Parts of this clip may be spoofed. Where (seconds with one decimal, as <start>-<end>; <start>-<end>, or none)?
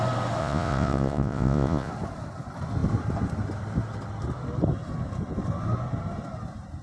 0.4-1.9